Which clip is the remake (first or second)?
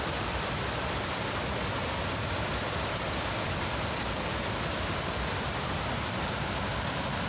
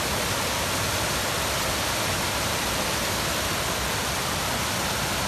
first